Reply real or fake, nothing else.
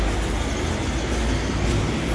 real